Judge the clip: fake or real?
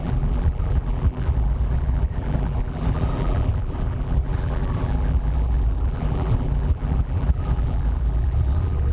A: fake